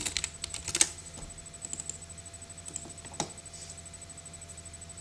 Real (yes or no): yes